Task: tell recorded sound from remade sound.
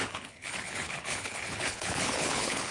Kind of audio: remade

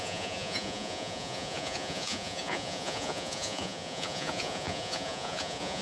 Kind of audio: remade